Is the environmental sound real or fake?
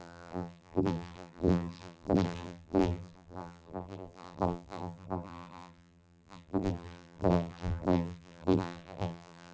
fake